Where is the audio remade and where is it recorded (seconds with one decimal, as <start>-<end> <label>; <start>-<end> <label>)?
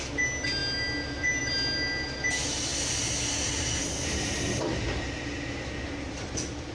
0.0-6.7 recorded